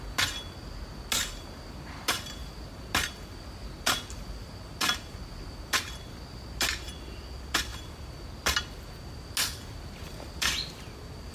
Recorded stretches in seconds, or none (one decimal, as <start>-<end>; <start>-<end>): 0.0-11.3